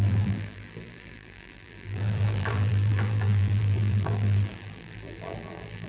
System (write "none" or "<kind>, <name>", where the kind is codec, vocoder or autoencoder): vocoder, BigVGAN v2